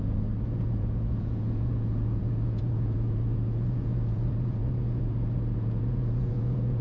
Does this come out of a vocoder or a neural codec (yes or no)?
yes